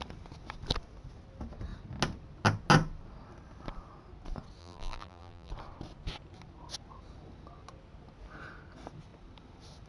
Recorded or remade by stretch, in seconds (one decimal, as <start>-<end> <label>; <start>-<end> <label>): 0.0-4.6 recorded; 4.6-5.5 remade; 5.5-9.9 recorded